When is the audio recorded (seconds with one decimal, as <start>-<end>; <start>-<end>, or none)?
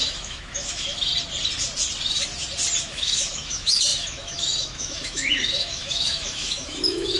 1.1-2.8